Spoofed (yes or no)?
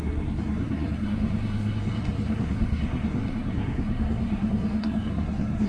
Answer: yes